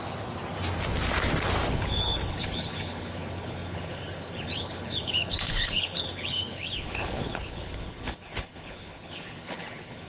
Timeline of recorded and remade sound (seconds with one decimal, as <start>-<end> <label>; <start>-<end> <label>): 0.0-1.7 recorded; 1.7-10.1 remade